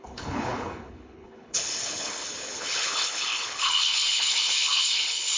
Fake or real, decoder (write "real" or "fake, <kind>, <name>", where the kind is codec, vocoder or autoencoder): fake, codec, HILCodec